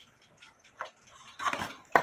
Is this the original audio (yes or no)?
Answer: no